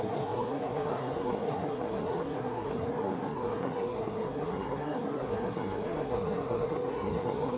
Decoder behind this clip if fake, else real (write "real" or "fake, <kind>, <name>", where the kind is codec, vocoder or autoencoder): fake, codec, SNAC